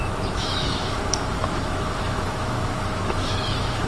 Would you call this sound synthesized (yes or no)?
yes